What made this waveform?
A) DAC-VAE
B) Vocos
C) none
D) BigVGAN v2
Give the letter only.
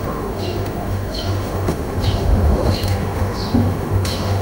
A